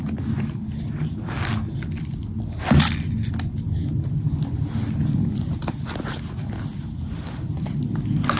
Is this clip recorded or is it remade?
recorded